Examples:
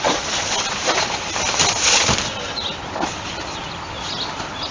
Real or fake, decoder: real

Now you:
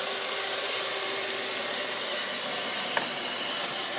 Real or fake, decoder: fake, vocoder, BigVGAN v2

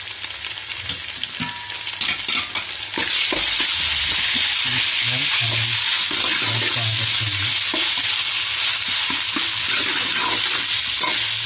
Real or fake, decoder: real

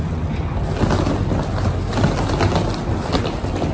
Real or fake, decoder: real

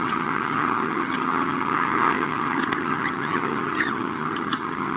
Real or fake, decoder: fake, vocoder, HiFi-GAN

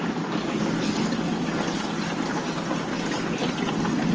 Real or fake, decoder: real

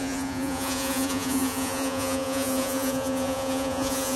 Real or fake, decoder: fake, vocoder, Vocos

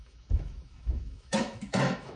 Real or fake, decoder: fake, autoencoder, DAC-VAE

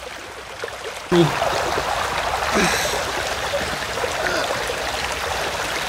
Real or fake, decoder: fake, vocoder, BigVGAN v2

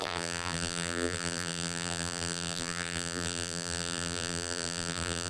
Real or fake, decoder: fake, vocoder, BigVGAN v2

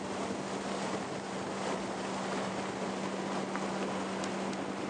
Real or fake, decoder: real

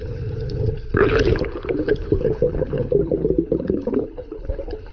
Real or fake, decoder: fake, codec, HILCodec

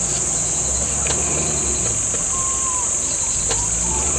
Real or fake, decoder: real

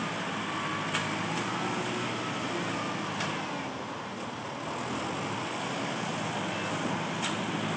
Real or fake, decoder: real